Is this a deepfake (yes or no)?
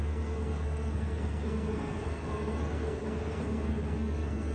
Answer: yes